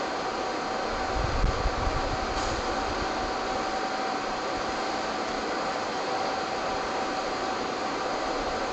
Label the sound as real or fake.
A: real